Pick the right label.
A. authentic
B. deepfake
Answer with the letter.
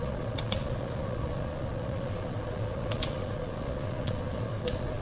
B